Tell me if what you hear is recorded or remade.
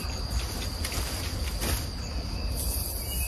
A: recorded